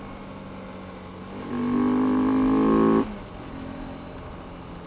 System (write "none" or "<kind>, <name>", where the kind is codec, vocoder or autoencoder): none